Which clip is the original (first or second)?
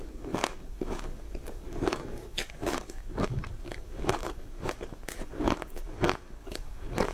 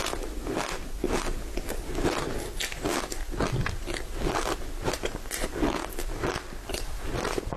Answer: second